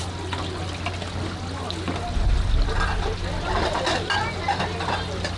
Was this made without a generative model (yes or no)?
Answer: yes